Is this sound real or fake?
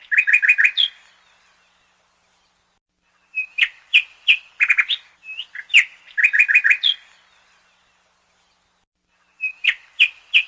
real